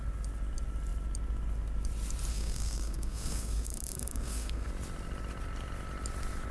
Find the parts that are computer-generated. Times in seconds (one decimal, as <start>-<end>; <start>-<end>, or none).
2.3-4.7